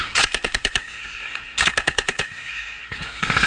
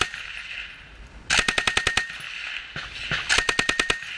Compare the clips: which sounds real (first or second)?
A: second